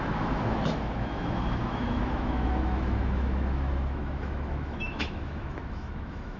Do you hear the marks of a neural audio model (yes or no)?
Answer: yes